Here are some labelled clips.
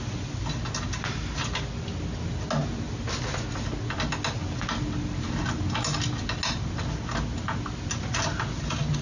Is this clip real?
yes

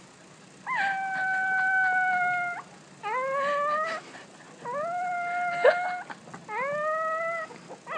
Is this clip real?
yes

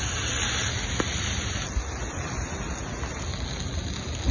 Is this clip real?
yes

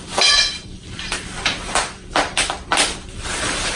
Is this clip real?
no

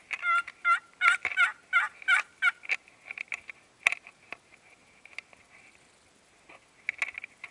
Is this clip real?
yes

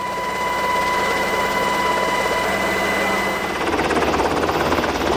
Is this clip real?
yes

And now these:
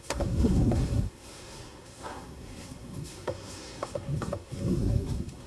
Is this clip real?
no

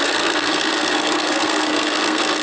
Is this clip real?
no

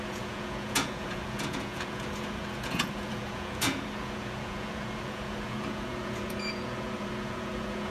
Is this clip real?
no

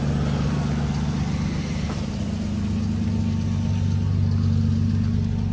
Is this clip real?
yes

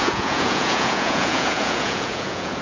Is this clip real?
no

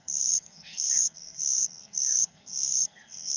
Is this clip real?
no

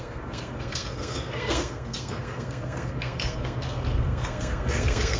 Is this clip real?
no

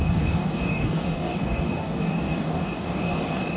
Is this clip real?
no